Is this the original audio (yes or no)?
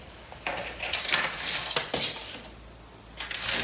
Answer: yes